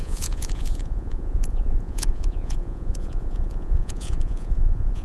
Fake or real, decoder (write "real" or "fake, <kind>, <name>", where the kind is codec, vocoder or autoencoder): fake, vocoder, Vocos